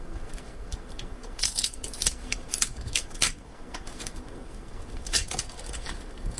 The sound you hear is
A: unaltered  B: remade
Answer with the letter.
B